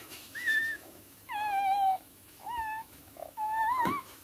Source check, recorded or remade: remade